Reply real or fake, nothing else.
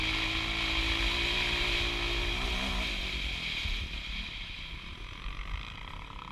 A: real